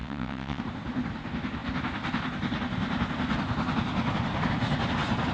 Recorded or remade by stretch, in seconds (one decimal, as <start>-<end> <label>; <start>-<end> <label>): 0.0-0.6 remade; 0.6-5.3 recorded